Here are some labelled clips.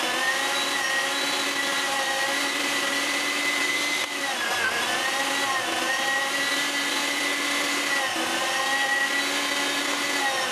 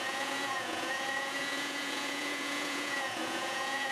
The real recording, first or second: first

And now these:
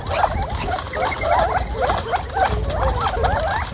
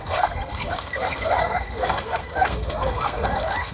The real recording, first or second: first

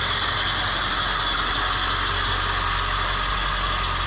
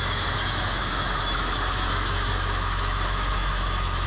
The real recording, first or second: first